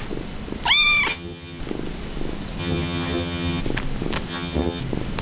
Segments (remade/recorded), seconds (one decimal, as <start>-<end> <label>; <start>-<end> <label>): 0.0-1.1 recorded; 1.1-1.6 remade; 1.6-2.6 recorded; 2.6-3.6 remade; 3.6-4.3 recorded; 4.3-4.8 remade; 4.8-5.2 recorded